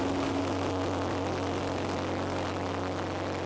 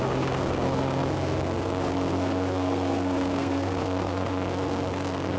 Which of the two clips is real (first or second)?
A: first